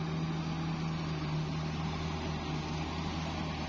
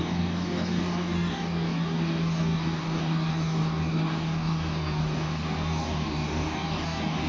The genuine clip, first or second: first